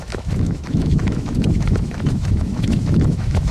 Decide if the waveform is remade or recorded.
remade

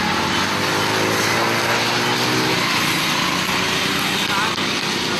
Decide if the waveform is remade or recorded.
recorded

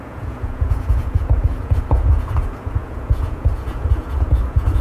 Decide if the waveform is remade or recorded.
remade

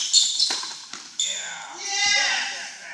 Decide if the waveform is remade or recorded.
recorded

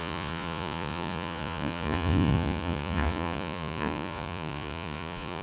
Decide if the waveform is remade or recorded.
remade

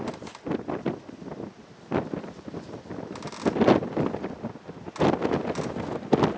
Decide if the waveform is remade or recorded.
recorded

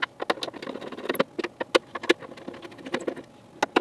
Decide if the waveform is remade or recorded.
recorded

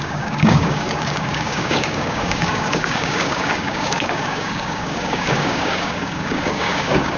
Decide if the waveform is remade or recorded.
remade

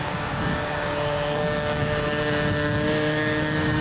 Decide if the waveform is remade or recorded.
remade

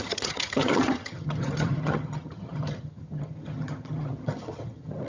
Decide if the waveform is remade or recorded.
remade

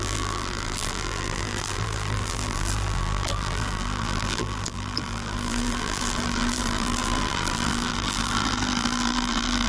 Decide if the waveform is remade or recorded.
remade